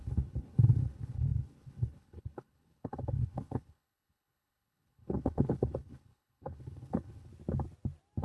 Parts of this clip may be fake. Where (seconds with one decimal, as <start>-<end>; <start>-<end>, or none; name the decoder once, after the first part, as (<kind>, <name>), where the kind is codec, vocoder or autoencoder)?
0.0-7.3 (codec, HILCodec)